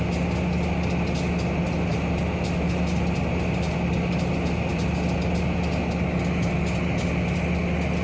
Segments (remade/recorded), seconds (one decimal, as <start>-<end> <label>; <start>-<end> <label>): 0.0-8.0 recorded